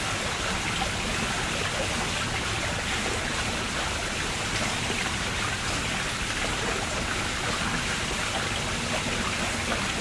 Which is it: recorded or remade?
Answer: recorded